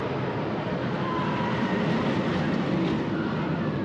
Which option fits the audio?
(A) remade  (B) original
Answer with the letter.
A